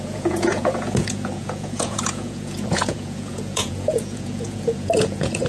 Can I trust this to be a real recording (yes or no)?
no